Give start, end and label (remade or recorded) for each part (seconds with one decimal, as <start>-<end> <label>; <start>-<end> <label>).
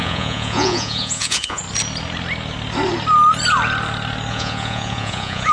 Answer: 0.0-1.6 remade; 1.6-4.3 recorded; 4.3-5.5 remade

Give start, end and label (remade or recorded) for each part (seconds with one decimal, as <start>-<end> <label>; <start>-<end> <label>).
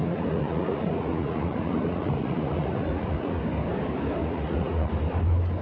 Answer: 0.0-3.4 remade; 3.4-4.2 recorded; 4.2-4.9 remade; 4.9-5.6 recorded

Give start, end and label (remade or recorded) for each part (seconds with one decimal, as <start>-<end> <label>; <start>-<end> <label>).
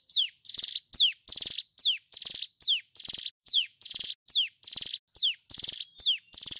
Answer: 0.0-3.4 recorded; 3.4-4.1 remade; 4.1-6.6 recorded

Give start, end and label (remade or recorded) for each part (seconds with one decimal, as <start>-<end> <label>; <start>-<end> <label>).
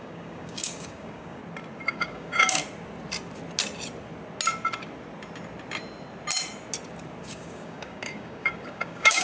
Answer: 0.0-1.4 remade; 1.4-1.9 recorded; 1.9-2.6 remade; 2.6-7.2 recorded; 7.2-9.2 remade